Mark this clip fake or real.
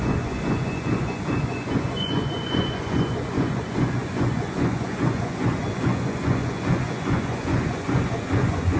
fake